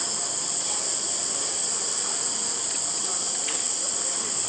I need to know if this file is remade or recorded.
remade